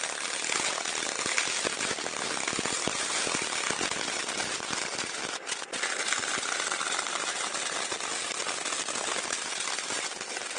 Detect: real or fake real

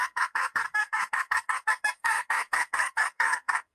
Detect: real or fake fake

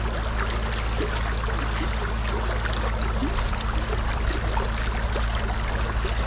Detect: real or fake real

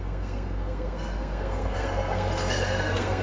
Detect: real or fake fake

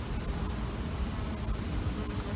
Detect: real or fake real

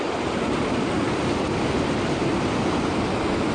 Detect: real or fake real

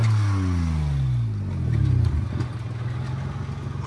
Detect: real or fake real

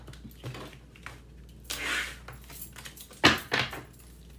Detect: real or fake real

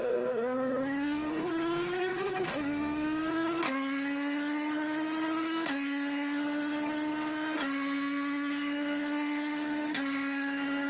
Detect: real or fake fake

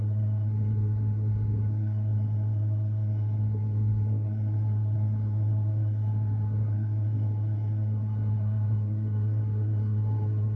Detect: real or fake fake